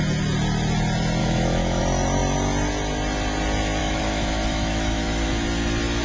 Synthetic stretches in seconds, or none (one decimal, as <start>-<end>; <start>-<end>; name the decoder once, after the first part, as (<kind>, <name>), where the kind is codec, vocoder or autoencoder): 1.2-1.8 (autoencoder, DAC-VAE); 3.8-5.3